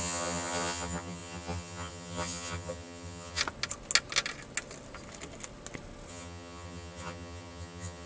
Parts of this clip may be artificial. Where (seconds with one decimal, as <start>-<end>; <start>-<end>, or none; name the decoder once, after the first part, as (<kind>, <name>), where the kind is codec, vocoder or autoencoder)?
0.0-3.4 (vocoder, HiFi-GAN); 6.1-8.1